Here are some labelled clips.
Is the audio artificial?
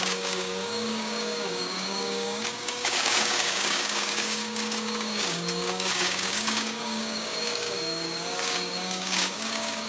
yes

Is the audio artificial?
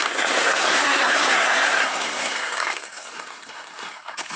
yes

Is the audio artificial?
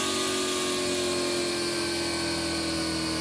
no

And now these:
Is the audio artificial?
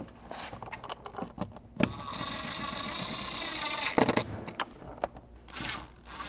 no